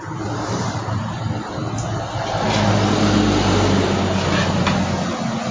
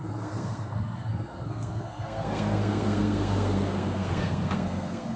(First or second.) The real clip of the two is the first